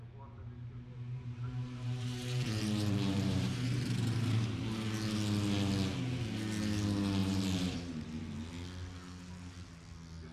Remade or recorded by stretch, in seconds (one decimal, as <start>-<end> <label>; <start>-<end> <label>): 0.0-0.9 recorded; 0.9-4.6 remade; 4.6-7.2 recorded; 7.2-8.2 remade; 8.2-10.3 recorded